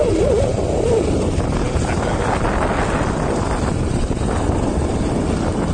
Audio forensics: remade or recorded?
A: recorded